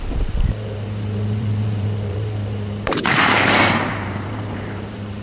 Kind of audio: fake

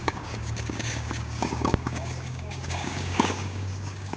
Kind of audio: fake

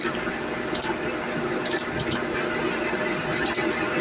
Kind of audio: fake